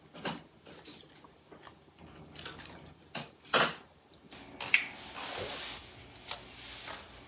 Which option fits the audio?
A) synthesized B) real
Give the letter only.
B